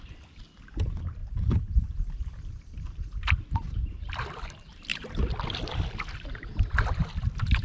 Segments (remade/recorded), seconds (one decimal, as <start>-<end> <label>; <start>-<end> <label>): 0.0-1.2 recorded; 1.2-2.8 remade; 2.8-4.9 recorded; 4.9-5.7 remade; 5.7-7.6 recorded